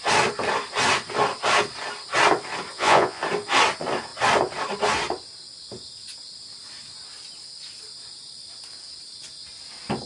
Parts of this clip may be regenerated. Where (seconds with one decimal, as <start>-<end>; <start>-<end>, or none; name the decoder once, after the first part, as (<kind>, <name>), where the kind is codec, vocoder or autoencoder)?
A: 2.7-3.2 (vocoder, Vocos)